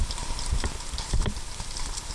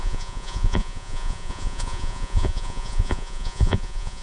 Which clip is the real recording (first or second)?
first